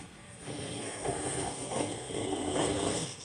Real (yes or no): no